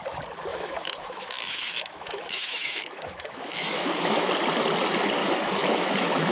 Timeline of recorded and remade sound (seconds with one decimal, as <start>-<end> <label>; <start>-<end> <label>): 0.0-0.5 recorded; 0.5-4.3 remade; 4.3-5.2 recorded; 5.2-6.3 remade